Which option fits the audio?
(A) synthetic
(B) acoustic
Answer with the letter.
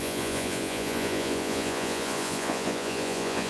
A